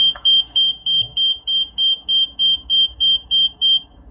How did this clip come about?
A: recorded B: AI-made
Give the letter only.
B